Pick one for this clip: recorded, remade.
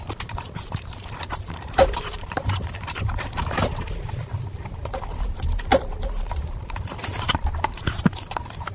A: remade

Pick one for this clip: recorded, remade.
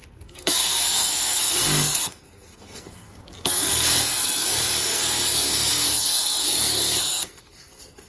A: remade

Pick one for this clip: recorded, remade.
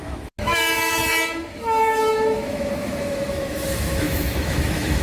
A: remade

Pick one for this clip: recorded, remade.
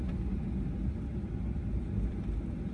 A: recorded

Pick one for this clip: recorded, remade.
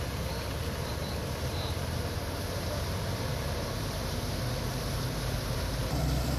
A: remade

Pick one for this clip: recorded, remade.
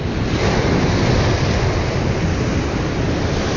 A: recorded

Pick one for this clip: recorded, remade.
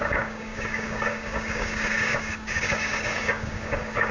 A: remade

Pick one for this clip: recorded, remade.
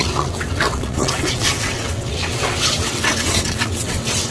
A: remade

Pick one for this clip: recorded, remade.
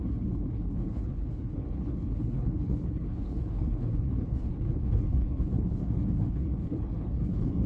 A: remade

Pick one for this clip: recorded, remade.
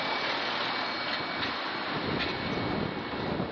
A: recorded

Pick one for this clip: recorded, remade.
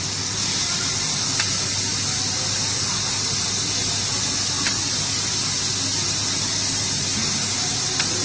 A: recorded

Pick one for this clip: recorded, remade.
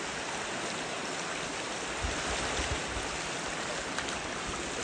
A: recorded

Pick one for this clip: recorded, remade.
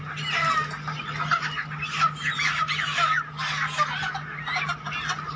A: recorded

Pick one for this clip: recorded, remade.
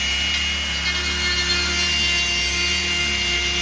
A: recorded